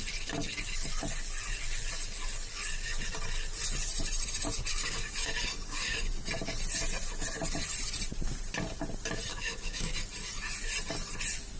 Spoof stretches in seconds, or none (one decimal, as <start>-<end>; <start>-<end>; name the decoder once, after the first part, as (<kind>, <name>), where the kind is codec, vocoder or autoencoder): 4.7-6.1 (codec, DAC); 9.3-9.9